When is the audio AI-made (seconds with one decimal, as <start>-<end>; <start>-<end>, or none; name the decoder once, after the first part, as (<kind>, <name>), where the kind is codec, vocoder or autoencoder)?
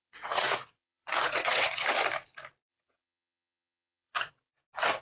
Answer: 0.0-1.9 (vocoder, WaveNeXt); 2.7-4.5